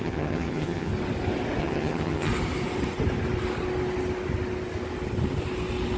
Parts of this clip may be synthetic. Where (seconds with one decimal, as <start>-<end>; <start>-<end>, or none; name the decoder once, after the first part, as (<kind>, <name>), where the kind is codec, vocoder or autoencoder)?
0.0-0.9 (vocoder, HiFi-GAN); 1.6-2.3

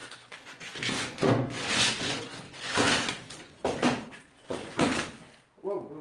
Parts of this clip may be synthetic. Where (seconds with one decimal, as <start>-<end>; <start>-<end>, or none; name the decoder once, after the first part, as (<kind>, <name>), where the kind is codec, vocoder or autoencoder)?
0.0-3.6 (vocoder, Vocos); 4.1-4.9

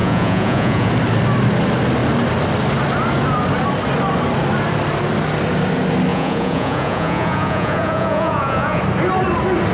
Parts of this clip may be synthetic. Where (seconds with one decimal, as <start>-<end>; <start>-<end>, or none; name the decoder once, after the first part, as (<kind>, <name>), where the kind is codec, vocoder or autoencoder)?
0.0-0.9 (vocoder, Vocos); 6.1-8.8